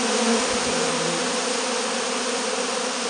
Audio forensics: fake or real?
real